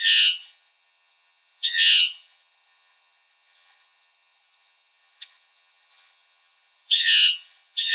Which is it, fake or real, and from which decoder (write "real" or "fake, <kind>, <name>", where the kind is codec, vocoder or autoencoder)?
fake, vocoder, HiFi-GAN